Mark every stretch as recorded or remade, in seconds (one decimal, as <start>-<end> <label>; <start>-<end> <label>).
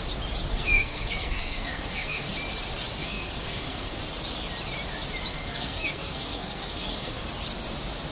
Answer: 0.0-0.5 recorded; 0.5-2.3 remade; 2.3-3.0 recorded; 3.0-4.0 remade; 4.0-5.3 recorded; 5.3-7.2 remade; 7.2-8.1 recorded